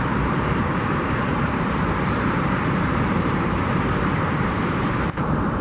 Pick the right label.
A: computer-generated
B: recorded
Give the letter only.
A